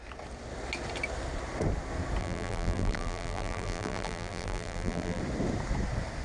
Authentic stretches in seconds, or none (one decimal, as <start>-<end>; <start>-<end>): 0.0-2.2; 5.2-6.2